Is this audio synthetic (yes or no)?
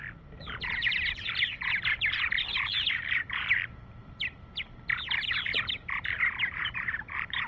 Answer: yes